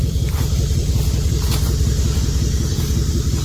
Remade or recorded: remade